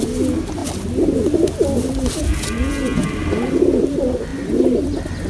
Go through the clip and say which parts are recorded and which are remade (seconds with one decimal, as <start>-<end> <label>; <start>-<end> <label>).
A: 0.0-5.3 recorded